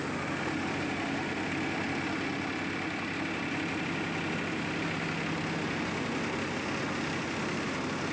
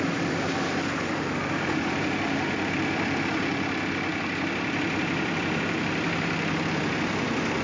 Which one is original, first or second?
first